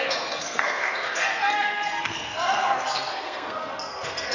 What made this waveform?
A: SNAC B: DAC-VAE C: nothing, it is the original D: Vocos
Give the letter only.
A